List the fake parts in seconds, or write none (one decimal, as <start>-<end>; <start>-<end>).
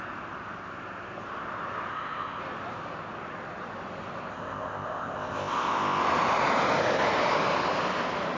1.9-2.4; 4.3-6.0